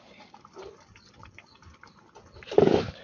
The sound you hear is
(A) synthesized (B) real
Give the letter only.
B